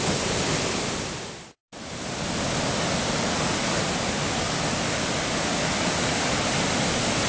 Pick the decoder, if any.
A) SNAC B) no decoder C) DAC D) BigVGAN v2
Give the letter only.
B